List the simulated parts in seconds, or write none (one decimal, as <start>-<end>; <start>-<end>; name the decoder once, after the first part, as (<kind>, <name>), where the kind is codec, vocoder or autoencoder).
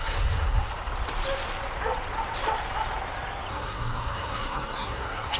0.0-0.7 (codec, SNAC); 3.5-5.4